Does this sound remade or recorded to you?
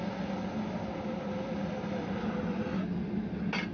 recorded